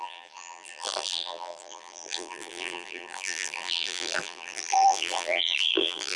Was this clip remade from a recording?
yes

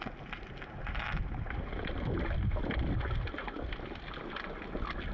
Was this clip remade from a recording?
no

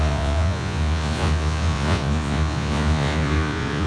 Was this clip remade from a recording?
yes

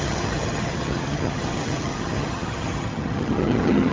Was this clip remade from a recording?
yes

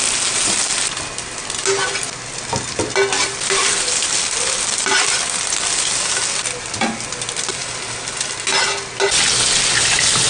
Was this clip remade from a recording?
no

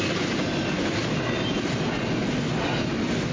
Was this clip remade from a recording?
no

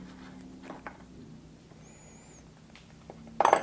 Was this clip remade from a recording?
no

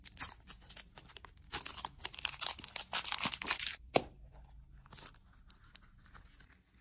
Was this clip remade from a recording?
no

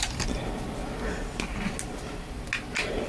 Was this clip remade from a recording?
no